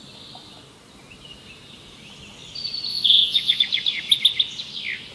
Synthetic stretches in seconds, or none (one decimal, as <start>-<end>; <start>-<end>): 2.9-3.6